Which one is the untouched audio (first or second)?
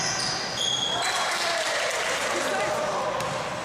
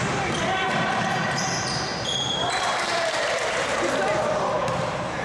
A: first